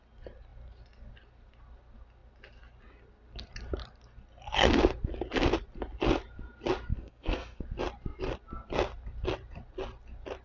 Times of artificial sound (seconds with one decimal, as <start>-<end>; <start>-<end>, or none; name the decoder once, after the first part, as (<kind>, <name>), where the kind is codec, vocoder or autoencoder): 6.9-7.6 (codec, SNAC)